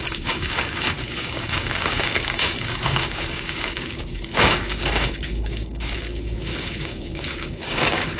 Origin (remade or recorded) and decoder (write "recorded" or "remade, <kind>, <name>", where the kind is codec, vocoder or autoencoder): remade, codec, DAC